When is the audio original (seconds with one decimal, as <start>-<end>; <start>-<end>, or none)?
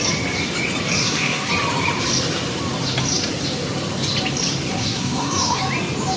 0.0-1.0; 1.5-4.7; 5.6-6.2